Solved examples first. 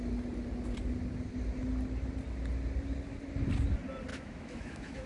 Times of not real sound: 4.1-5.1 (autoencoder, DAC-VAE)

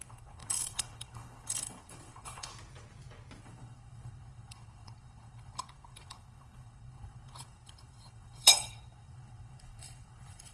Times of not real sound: 0.0-2.5 (codec, HILCodec); 3.4-10.5

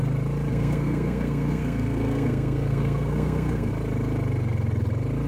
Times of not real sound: 0.5-3.7 (codec, SNAC)